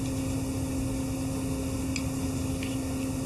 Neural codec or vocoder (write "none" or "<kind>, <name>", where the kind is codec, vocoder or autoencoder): none